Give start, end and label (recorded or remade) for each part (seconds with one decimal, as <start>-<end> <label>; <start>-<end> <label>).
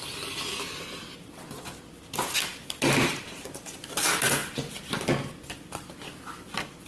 0.0-6.9 recorded